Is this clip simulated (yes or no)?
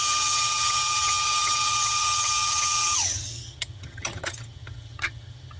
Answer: yes